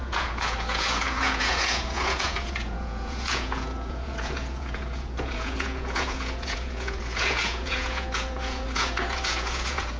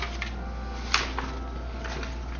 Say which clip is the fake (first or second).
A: first